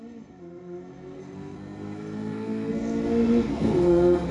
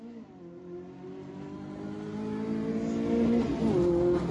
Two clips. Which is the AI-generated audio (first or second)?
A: first